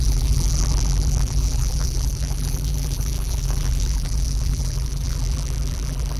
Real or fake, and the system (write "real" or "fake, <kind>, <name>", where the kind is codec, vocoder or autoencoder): fake, vocoder, BigVGAN v2